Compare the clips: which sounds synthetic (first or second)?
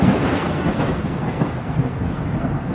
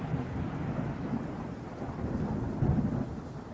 first